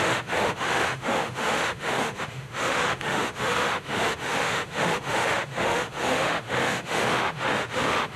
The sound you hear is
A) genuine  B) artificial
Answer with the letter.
B